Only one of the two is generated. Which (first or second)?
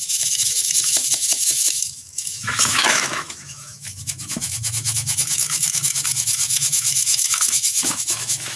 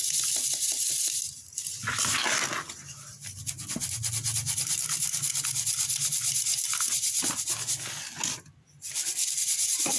first